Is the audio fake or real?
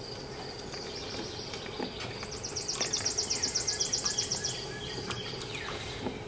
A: real